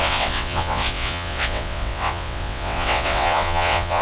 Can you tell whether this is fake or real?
fake